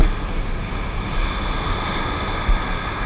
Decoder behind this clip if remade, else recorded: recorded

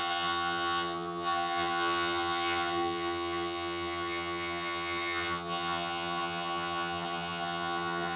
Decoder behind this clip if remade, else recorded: remade, vocoder, HiFi-GAN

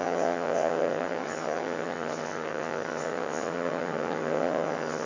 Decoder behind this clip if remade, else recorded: remade, vocoder, HiFi-GAN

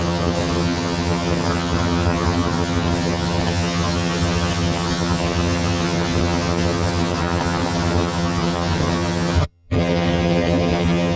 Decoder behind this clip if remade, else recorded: remade, vocoder, HiFi-GAN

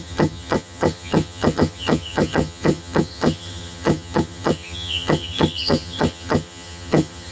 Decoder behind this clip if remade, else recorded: remade, vocoder, HiFi-GAN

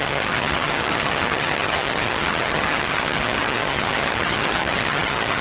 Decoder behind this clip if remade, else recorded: remade, vocoder, HiFi-GAN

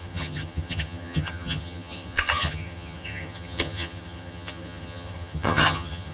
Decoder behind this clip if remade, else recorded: remade, vocoder, HiFi-GAN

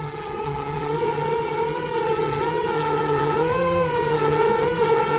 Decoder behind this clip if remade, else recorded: remade, vocoder, HiFi-GAN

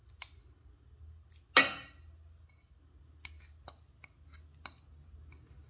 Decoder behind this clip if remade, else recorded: recorded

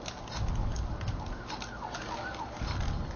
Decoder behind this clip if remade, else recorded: recorded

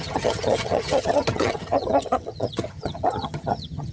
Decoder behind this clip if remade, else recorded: remade, vocoder, HiFi-GAN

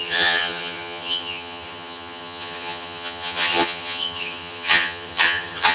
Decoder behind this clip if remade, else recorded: remade, vocoder, HiFi-GAN